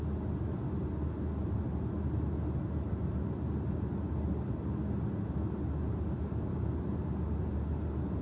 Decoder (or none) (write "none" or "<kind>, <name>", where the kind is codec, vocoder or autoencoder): none